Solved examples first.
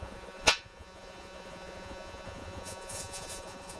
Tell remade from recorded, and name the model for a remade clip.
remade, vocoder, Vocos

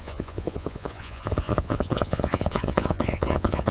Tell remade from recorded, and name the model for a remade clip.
remade, vocoder, Vocos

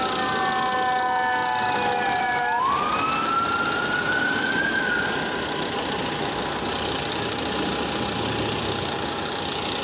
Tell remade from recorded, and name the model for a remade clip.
recorded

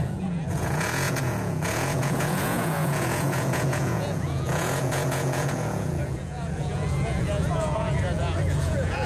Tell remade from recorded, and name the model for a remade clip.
remade, vocoder, Vocos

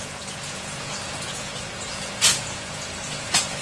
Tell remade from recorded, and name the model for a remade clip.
remade, vocoder, Vocos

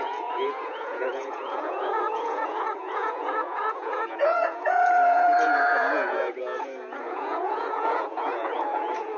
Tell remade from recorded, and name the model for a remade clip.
remade, vocoder, Vocos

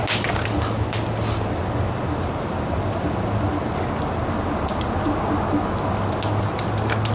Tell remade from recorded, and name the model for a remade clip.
recorded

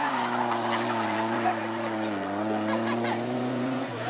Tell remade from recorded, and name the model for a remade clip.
remade, vocoder, Vocos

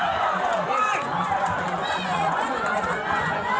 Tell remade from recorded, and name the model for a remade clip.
remade, vocoder, Vocos